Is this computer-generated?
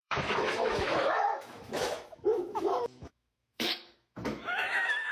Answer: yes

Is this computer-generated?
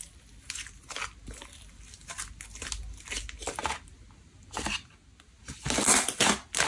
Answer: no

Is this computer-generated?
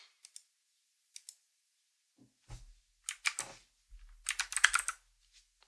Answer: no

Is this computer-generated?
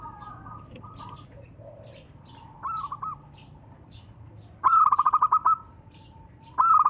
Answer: yes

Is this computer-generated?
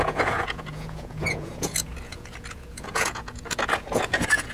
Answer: yes